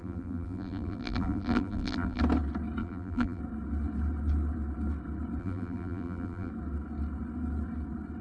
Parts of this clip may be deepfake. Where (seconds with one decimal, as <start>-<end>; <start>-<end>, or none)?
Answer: 0.0-2.2; 2.8-3.4; 5.4-6.5